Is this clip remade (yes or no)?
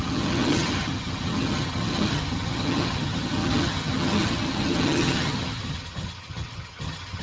yes